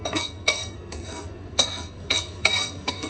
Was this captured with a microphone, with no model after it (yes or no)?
no